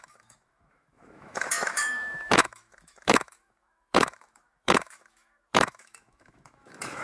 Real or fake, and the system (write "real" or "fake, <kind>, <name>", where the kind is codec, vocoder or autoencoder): fake, autoencoder, DAC-VAE